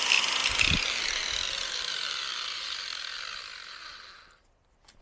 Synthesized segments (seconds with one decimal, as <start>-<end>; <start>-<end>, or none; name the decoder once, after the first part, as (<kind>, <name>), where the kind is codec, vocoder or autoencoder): 0.4-3.4 (vocoder, BigVGAN v2)